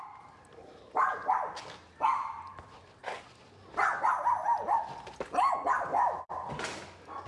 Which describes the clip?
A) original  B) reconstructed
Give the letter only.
A